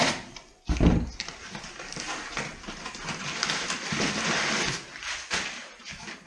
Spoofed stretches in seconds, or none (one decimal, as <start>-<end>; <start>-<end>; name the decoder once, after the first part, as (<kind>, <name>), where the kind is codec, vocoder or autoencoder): 0.0-6.3 (vocoder, BigVGAN v2)